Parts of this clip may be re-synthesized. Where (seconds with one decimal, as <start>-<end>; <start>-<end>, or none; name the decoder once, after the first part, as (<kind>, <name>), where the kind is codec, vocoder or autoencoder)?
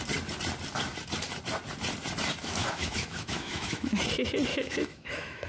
2.4-4.0 (autoencoder, DAC-VAE); 4.5-5.5